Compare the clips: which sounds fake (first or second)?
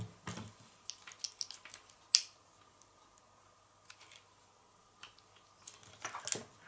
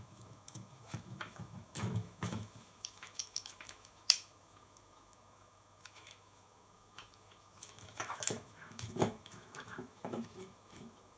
second